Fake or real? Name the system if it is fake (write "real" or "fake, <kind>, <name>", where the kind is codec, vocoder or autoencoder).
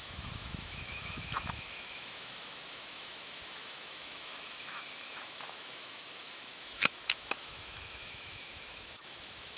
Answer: fake, autoencoder, DAC-VAE